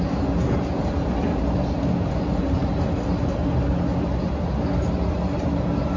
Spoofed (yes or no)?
no